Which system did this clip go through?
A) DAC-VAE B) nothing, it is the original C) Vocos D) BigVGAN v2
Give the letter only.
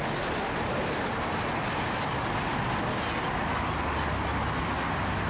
B